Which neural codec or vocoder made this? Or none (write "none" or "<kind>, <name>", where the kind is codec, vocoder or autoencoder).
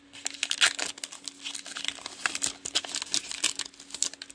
none